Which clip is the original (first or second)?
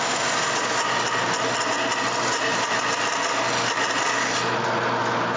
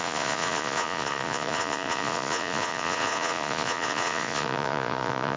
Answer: first